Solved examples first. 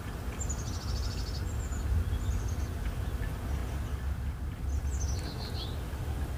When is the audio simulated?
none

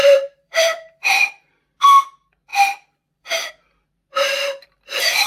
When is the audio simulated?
0.0-1.5 (vocoder, BigVGAN v2); 2.5-3.5

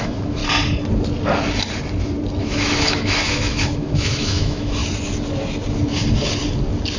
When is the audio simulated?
0.0-0.4 (autoencoder, DAC-VAE); 2.4-4.8

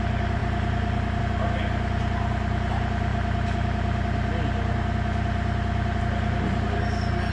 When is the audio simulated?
none

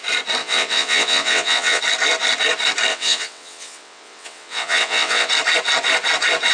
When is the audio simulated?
0.4-1.8 (vocoder, WaveNeXt); 2.9-5.3